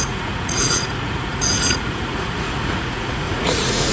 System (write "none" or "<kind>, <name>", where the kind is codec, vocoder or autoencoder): vocoder, Vocos